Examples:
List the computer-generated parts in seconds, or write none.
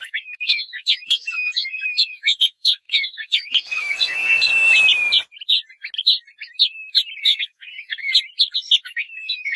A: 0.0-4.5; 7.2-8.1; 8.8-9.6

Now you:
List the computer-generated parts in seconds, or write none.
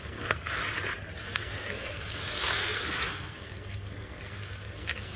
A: 0.0-0.6; 1.2-5.2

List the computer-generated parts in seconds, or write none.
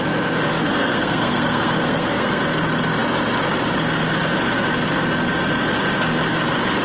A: 0.7-2.4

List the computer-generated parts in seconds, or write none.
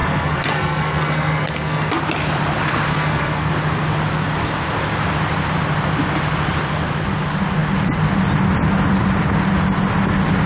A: 0.0-1.9; 2.9-3.5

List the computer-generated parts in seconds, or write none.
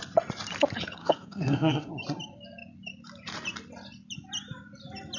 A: 1.0-1.9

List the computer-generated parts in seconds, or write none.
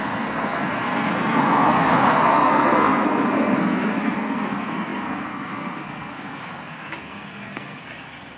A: 0.0-8.4